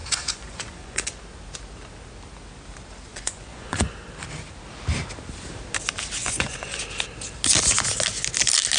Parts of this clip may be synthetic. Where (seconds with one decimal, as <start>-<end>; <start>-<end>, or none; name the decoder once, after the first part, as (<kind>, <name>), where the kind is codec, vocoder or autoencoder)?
0.0-1.2 (vocoder, Vocos); 3.1-3.9; 6.2-6.8